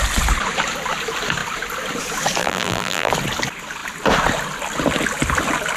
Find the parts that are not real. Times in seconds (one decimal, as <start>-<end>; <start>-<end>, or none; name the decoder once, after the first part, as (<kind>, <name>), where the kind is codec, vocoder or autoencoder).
2.4-3.1 (vocoder, BigVGAN v2)